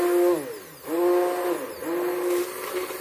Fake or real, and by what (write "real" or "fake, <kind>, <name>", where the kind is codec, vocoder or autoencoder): real